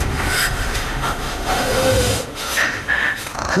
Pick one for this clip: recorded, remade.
remade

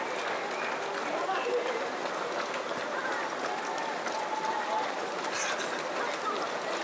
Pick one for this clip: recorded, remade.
recorded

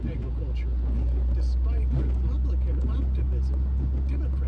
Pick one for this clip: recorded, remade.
recorded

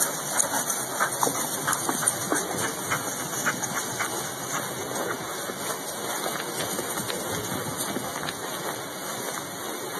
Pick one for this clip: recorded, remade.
recorded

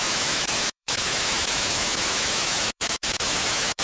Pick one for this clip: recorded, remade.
remade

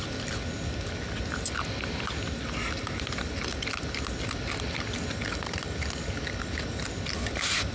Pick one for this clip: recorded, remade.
recorded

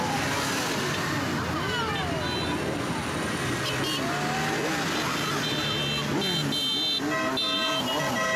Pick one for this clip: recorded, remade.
recorded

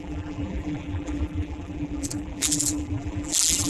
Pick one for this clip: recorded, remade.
remade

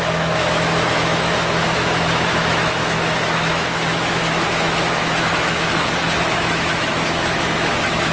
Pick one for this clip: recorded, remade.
remade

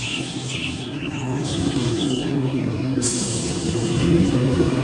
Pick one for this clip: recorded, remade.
remade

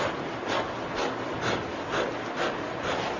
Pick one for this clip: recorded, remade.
recorded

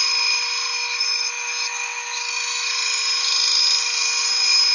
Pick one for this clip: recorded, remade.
recorded